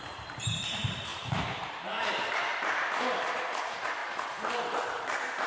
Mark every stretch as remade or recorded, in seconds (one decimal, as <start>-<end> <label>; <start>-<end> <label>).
0.0-2.5 remade; 2.5-3.6 recorded; 3.6-4.0 remade; 4.0-4.6 recorded; 4.6-5.5 remade